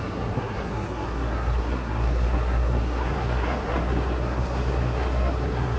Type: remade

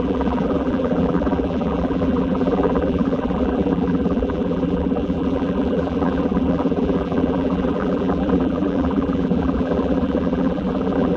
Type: remade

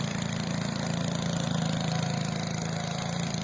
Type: recorded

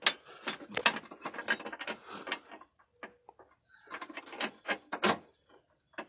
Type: recorded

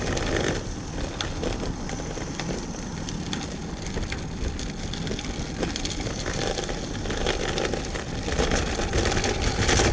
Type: recorded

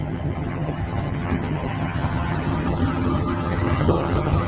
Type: remade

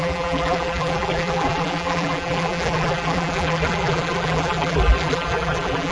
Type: remade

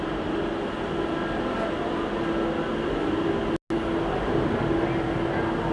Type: recorded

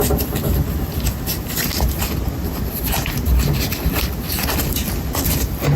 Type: recorded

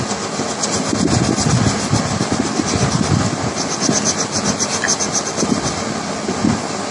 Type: recorded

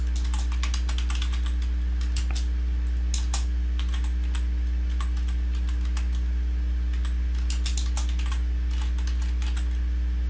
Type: recorded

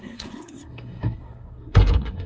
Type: remade